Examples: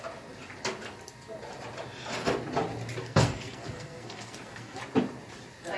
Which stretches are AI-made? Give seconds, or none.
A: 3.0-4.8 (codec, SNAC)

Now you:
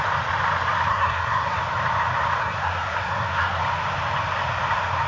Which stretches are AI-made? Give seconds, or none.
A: 0.9-1.6 (codec, SNAC); 2.4-3.6